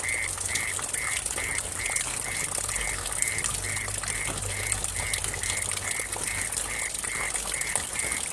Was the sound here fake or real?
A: real